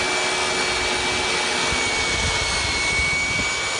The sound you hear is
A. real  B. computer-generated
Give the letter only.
A